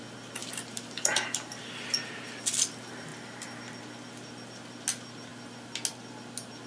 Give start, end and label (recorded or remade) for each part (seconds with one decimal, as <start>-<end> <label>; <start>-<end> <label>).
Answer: 0.0-0.4 recorded; 0.4-1.5 remade; 1.5-6.7 recorded